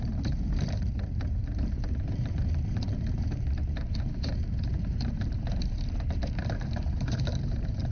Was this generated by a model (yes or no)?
yes